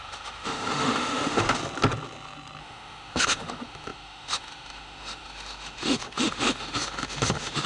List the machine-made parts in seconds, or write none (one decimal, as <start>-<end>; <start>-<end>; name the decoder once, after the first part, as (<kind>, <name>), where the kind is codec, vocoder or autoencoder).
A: 0.0-1.6 (autoencoder, DAC-VAE); 2.6-7.7